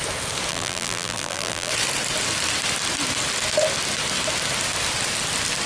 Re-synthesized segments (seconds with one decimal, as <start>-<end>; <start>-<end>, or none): 0.5-1.7